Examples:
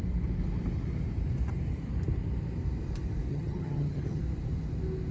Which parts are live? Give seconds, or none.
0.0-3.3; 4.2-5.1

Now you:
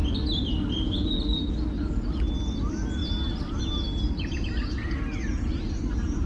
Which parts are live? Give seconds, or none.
0.0-6.3

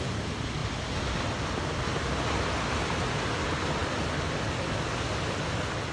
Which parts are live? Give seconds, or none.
0.0-5.9

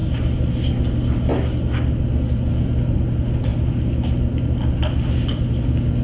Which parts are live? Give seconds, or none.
0.0-6.0